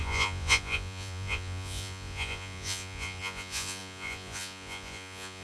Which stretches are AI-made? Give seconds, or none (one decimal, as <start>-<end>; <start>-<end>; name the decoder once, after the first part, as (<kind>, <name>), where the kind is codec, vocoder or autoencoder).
0.0-5.4 (vocoder, Vocos)